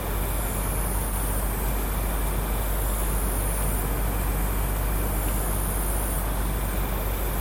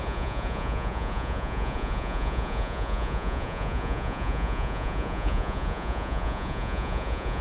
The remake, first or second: second